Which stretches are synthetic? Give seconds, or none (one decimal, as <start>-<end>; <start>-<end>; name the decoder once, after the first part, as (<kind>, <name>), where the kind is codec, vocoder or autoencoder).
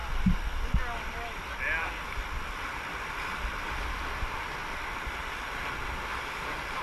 none